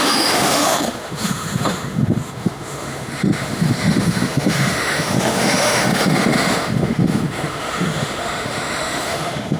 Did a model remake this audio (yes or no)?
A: yes